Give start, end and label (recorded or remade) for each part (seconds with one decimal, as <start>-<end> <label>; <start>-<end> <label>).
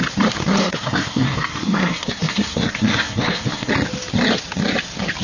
0.0-0.6 recorded; 0.6-3.7 remade; 3.7-5.2 recorded